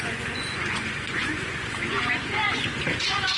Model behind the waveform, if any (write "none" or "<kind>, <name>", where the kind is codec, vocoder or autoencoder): vocoder, Vocos